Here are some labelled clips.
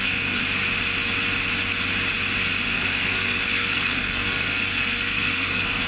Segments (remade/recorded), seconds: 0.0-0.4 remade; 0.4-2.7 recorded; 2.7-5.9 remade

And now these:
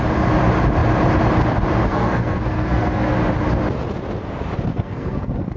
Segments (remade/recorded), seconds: 0.0-1.8 recorded; 1.8-3.1 remade; 3.1-4.7 recorded; 4.7-5.6 remade